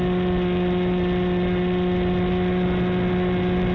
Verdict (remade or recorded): recorded